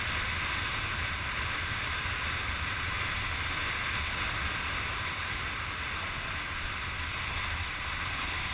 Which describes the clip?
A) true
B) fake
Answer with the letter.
A